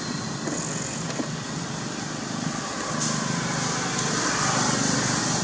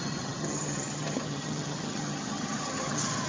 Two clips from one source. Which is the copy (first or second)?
second